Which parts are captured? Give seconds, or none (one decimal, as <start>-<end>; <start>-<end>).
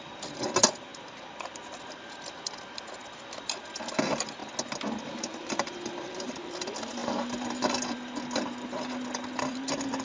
4.4-5.0; 7.0-9.4